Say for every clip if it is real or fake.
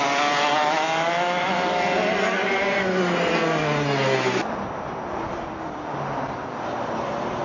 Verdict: real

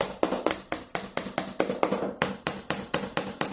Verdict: real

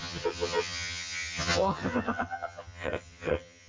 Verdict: fake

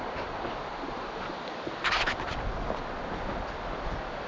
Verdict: real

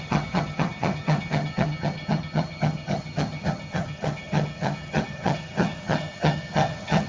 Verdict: fake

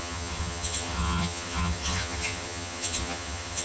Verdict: fake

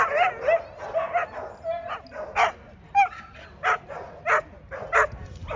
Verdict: real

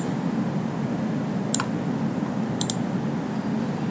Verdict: real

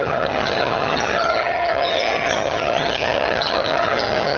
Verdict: fake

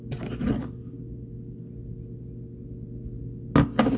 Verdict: real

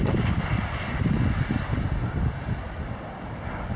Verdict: real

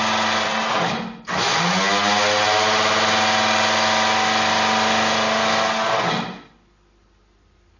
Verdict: real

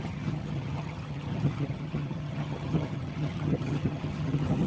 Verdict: fake